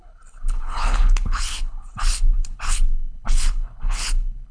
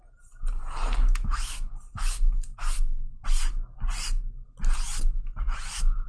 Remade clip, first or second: first